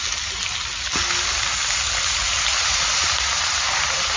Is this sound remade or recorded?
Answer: recorded